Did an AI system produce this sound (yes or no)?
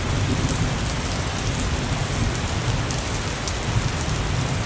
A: no